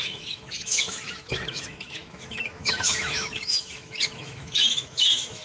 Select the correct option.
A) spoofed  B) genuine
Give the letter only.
A